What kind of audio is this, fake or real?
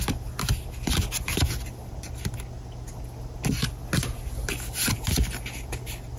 real